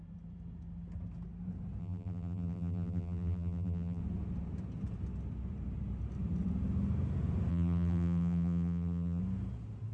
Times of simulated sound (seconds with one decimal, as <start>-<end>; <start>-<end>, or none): 1.8-4.0; 7.5-9.2